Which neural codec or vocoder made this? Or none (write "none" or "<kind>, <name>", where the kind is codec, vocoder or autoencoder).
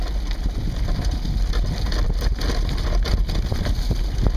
none